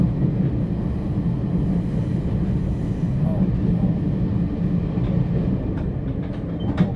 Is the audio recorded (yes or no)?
yes